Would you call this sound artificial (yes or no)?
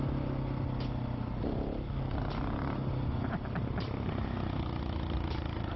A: no